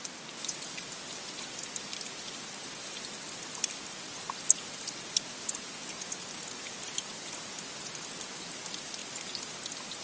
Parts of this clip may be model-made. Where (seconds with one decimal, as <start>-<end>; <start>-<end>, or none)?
none